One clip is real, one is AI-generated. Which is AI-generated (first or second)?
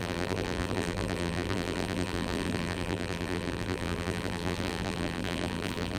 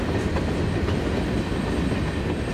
first